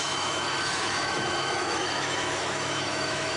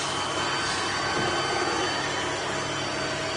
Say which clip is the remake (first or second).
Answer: first